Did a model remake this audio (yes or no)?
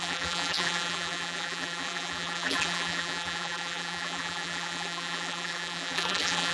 yes